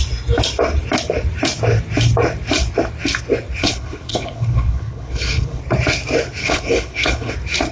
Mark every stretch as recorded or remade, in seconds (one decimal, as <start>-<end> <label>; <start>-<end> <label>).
0.0-3.6 recorded; 3.6-5.6 remade; 5.6-6.4 recorded; 6.4-7.3 remade; 7.3-7.7 recorded